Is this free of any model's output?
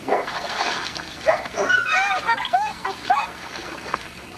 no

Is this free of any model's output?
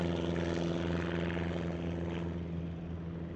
yes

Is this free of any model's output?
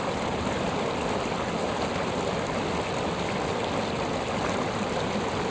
yes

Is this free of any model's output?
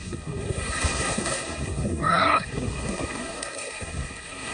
no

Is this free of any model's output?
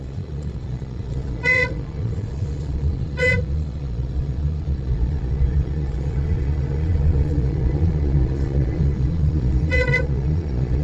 no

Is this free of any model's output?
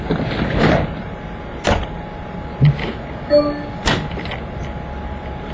yes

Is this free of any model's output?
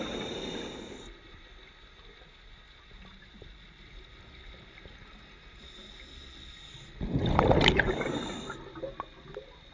yes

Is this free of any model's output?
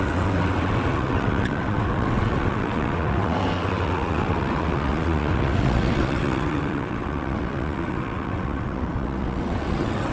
no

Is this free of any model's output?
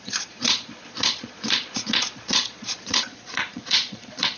no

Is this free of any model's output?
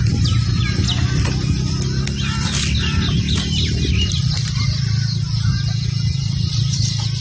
yes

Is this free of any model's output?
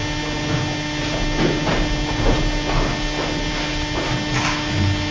yes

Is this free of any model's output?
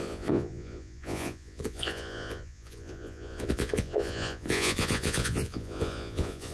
no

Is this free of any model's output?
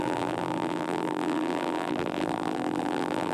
no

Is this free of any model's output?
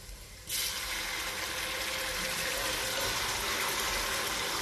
yes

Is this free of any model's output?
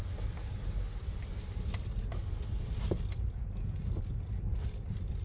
yes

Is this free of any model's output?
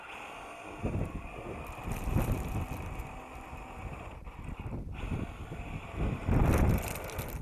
yes